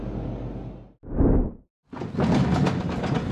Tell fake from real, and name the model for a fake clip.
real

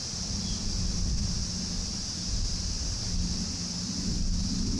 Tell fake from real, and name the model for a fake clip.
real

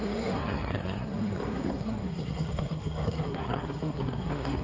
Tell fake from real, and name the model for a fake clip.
fake, codec, SNAC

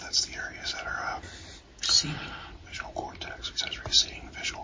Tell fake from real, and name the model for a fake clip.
real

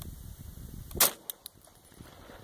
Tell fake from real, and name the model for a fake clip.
real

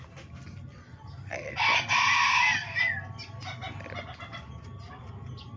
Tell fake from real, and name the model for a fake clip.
real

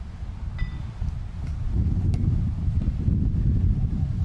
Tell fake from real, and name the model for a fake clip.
real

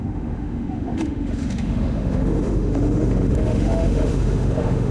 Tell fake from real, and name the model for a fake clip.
fake, autoencoder, DAC-VAE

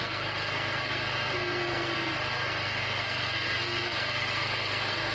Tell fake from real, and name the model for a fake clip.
fake, codec, SNAC